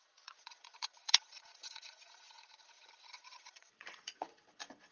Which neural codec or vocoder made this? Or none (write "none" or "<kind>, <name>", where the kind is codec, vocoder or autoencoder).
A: vocoder, Vocos